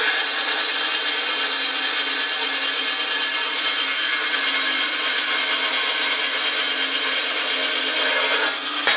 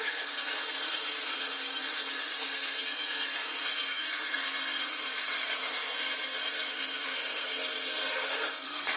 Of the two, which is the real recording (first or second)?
first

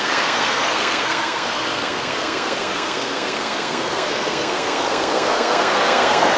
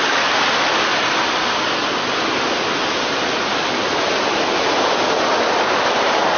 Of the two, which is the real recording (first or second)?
second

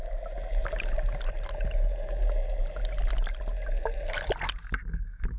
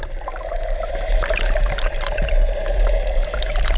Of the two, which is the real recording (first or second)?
first